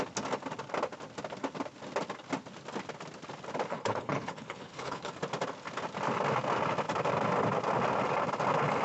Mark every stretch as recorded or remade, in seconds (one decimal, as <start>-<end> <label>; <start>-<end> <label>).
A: 0.0-3.7 recorded; 3.7-5.1 remade; 5.1-8.8 recorded